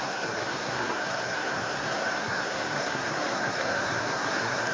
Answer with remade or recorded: remade